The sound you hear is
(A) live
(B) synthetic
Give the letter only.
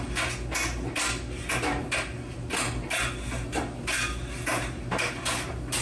A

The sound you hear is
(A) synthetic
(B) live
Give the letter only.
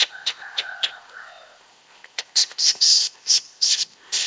A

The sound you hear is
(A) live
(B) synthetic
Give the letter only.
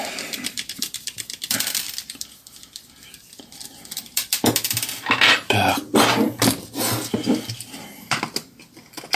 A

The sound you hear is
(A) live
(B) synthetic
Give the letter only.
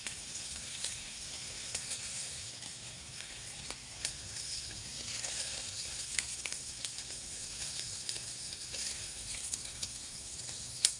B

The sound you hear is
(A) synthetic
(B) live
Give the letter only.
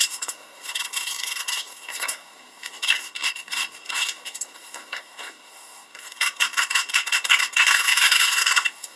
A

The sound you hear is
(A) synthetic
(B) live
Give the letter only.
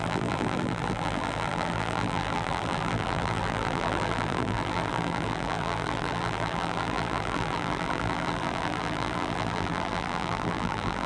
A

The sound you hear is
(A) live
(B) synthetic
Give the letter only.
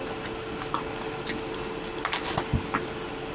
A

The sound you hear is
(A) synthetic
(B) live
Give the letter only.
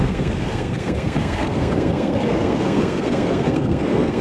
A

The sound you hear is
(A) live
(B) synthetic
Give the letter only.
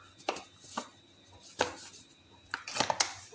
A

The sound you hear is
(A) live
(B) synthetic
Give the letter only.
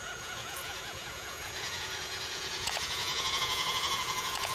B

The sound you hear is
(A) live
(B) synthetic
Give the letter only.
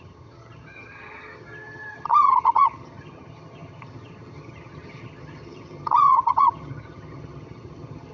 B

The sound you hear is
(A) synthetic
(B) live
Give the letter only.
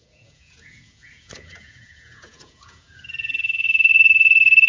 A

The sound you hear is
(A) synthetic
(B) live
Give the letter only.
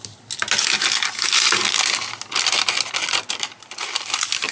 B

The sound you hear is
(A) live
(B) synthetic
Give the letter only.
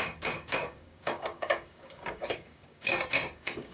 B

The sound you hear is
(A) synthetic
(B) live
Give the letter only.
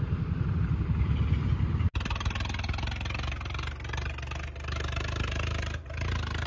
B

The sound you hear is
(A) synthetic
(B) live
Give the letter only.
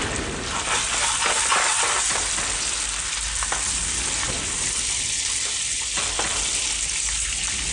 B